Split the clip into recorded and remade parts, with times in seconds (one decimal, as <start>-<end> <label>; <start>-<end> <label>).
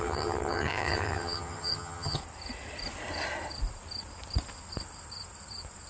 0.0-2.2 remade; 2.2-5.9 recorded